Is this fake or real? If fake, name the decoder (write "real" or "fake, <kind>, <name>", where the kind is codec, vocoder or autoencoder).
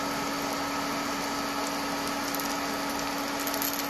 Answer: real